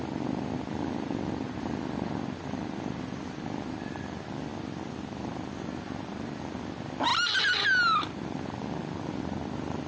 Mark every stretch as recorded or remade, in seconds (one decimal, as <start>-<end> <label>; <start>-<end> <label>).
0.0-9.9 recorded